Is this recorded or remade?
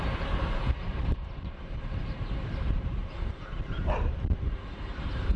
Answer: remade